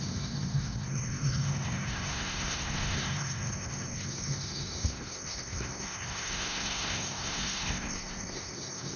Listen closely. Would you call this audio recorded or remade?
remade